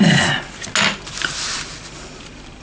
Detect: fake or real real